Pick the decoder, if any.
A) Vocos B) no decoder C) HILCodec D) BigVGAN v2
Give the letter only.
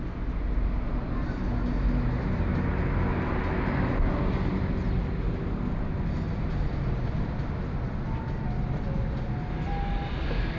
B